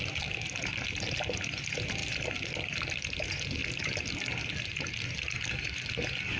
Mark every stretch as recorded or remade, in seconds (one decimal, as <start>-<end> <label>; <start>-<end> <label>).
0.0-6.4 recorded